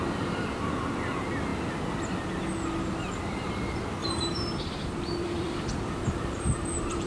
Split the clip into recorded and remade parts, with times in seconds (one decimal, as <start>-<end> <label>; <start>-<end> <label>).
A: 0.0-4.0 recorded; 4.0-7.1 remade